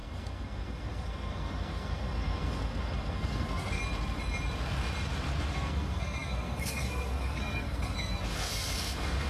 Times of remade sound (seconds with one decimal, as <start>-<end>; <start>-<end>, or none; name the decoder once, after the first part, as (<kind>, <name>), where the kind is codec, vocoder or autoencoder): 0.0-3.8 (codec, SNAC); 5.4-9.3